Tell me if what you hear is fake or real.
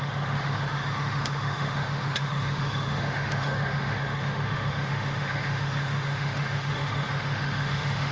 fake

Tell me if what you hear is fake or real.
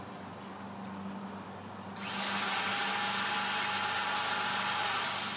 real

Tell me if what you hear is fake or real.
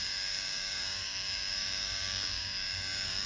fake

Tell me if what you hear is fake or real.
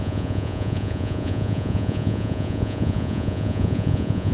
fake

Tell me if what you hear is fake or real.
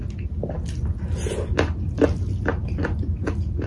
real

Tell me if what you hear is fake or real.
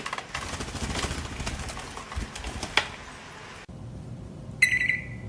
real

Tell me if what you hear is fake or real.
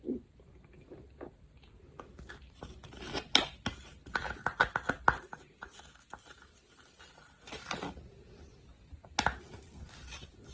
real